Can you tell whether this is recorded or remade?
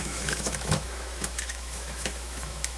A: remade